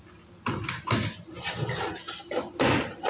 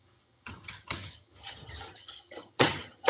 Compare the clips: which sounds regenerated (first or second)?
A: second